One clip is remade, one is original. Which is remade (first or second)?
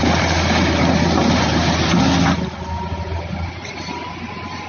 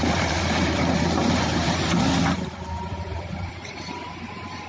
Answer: second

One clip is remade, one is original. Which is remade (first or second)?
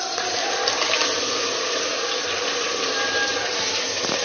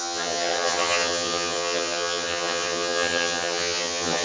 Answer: second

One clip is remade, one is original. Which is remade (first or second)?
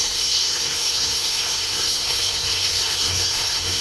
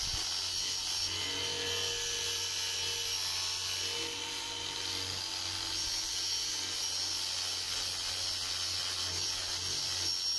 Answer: first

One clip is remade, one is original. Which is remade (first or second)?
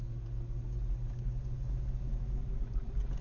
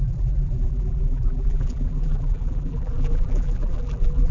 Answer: second